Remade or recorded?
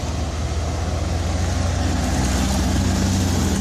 recorded